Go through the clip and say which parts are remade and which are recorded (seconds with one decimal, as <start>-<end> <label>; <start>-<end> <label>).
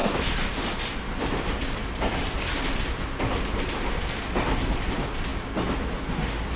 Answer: 0.0-4.0 remade; 4.0-6.6 recorded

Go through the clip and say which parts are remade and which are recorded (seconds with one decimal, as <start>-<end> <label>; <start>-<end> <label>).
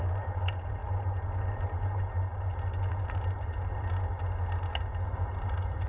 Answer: 0.0-5.9 recorded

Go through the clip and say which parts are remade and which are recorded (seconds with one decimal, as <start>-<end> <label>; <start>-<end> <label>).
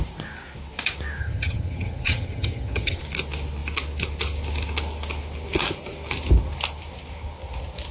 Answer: 0.0-1.2 recorded; 1.2-3.0 remade; 3.0-7.9 recorded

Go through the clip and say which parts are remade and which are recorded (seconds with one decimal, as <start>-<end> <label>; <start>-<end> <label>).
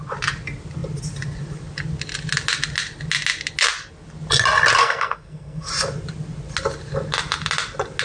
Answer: 0.0-4.8 recorded; 4.8-5.7 remade; 5.7-8.0 recorded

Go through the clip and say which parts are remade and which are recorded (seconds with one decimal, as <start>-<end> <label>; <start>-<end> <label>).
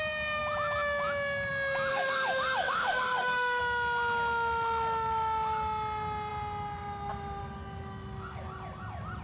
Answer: 0.0-1.9 recorded; 1.9-3.6 remade; 3.6-9.2 recorded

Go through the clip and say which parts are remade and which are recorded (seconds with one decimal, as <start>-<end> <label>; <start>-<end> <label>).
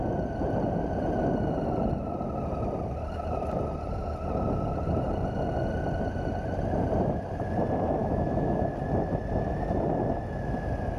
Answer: 0.0-8.0 recorded; 8.0-8.6 remade; 8.6-11.0 recorded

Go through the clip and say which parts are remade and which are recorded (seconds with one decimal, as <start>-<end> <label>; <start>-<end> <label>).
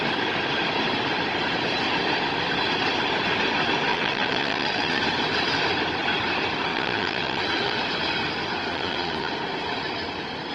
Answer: 0.0-3.9 recorded; 3.9-5.0 remade; 5.0-6.7 recorded; 6.7-7.8 remade; 7.8-8.7 recorded; 8.7-9.3 remade; 9.3-10.5 recorded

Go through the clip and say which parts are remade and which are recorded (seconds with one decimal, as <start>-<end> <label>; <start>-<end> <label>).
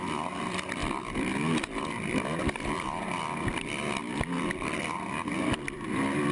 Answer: 0.0-0.8 remade; 0.8-2.4 recorded; 2.4-6.3 remade